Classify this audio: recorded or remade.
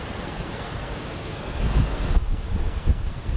remade